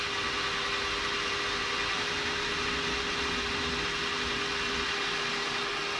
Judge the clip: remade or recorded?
recorded